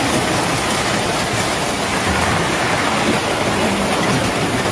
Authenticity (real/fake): real